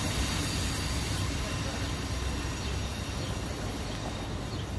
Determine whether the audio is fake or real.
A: real